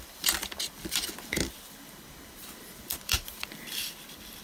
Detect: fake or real fake